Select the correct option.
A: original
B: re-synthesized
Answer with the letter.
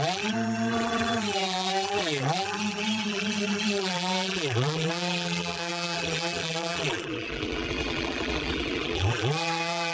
B